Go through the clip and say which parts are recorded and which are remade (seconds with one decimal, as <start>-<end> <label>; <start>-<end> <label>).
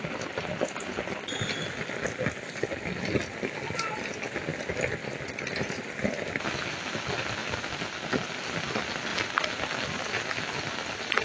0.0-11.2 recorded